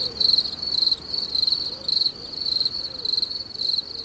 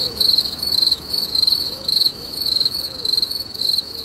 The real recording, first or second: first